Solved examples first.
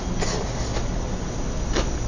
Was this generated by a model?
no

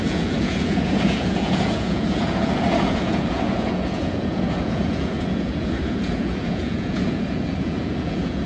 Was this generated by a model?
yes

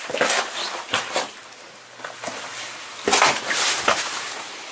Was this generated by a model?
yes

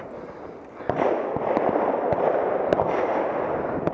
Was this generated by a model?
no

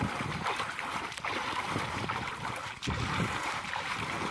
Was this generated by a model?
no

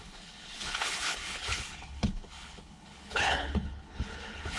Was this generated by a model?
yes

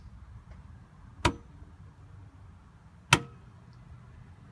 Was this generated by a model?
no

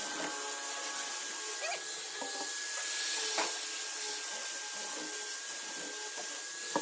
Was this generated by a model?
no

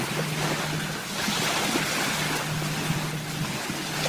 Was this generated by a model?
no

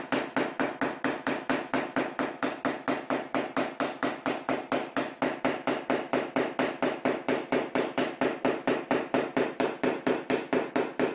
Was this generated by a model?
no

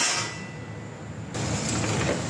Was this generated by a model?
no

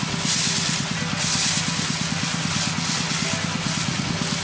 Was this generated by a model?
no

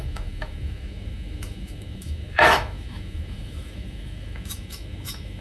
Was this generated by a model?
yes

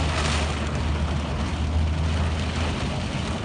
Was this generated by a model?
no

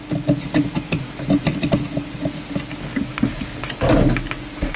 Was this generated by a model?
no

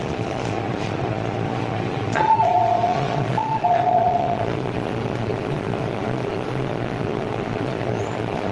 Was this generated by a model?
yes